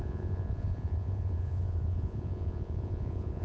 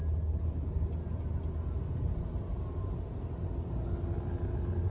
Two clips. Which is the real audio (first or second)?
second